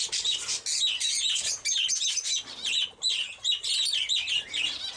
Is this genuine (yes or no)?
yes